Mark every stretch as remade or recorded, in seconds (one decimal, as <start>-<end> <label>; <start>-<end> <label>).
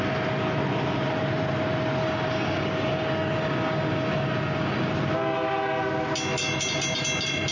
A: 0.0-2.0 recorded; 2.0-4.9 remade; 4.9-7.5 recorded